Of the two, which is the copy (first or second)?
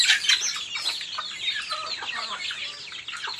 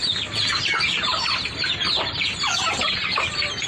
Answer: second